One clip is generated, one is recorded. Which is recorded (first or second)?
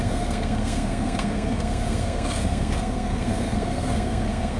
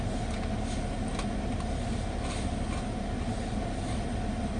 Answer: second